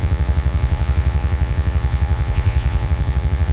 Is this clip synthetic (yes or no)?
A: yes